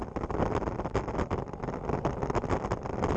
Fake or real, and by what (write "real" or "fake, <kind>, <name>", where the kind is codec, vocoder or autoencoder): real